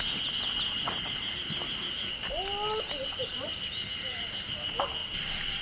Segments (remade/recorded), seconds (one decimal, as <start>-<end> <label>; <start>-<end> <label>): 0.0-5.6 recorded